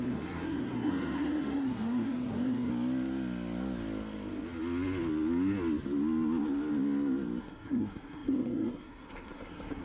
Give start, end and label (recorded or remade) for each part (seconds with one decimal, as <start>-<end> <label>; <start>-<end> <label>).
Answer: 0.0-2.7 remade; 2.7-7.4 recorded; 7.4-9.8 remade